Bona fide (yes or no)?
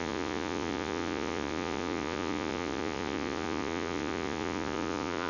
no